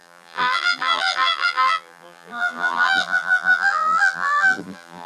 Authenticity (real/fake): fake